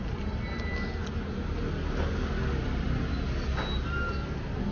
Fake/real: real